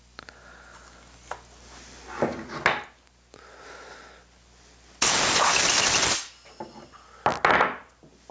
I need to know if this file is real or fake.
real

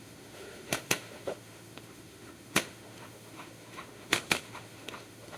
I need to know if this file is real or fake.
fake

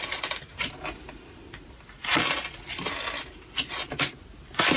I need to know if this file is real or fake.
real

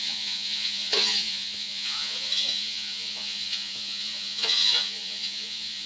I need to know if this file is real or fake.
fake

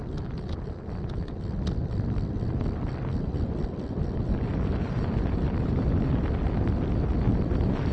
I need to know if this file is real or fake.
real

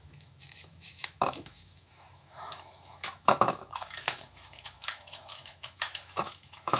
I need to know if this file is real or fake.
fake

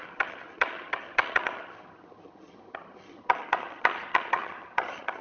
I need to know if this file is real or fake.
fake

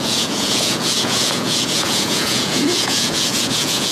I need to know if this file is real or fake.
fake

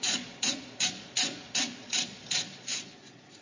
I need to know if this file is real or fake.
fake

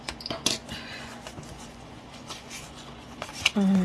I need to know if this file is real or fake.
fake